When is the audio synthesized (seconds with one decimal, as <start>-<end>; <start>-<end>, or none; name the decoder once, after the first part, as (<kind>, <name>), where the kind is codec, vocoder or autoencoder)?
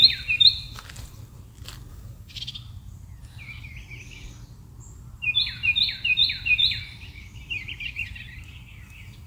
1.9-2.4 (codec, DAC)